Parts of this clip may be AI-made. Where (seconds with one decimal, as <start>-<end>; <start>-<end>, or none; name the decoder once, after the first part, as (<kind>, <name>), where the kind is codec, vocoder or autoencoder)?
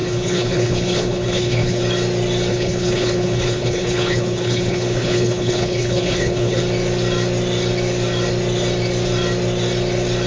0.0-1.8 (codec, HILCodec); 2.5-6.6